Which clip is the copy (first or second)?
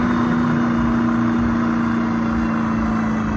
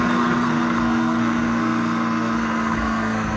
second